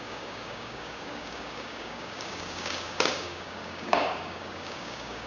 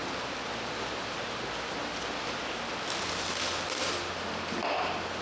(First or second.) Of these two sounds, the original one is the second